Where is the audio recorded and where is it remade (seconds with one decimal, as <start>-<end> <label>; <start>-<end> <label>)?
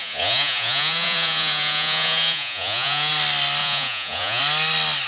0.0-3.1 remade; 3.1-3.6 recorded; 3.6-4.4 remade; 4.4-5.1 recorded